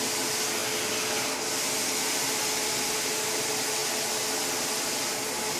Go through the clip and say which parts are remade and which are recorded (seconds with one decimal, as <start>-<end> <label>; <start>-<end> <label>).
0.0-5.6 recorded